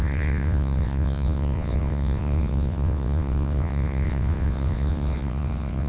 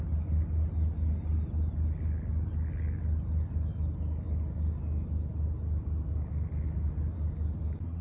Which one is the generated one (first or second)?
first